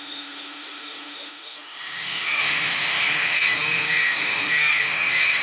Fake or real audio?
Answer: fake